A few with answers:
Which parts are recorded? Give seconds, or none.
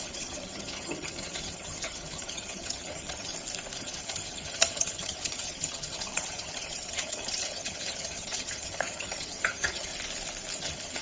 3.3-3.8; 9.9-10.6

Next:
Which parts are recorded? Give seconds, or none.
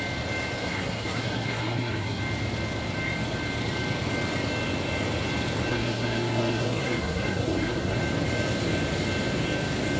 0.0-0.6; 2.2-5.7; 8.0-10.0